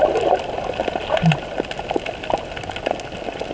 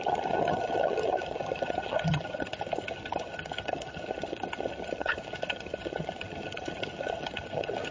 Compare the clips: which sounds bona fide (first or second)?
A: first